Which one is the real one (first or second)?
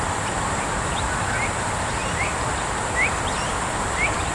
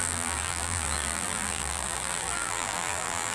first